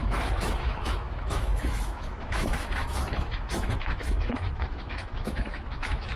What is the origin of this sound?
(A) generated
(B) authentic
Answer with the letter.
A